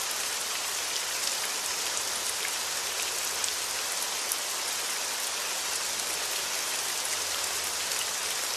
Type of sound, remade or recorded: recorded